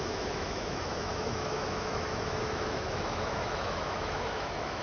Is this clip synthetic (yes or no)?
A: yes